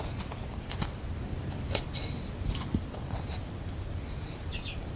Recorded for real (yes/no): yes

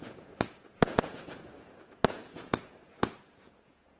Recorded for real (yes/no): no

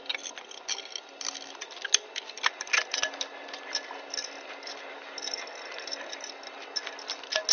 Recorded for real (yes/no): yes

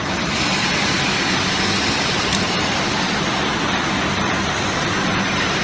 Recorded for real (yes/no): yes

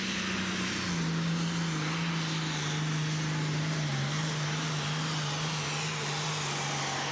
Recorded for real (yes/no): yes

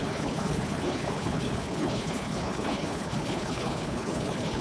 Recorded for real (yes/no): no